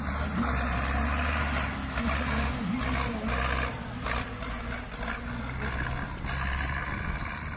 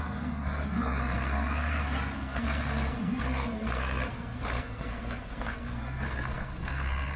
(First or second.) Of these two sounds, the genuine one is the first